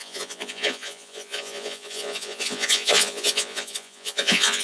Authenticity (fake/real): fake